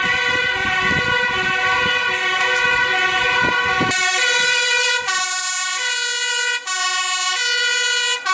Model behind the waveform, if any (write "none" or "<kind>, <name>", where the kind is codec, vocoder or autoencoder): none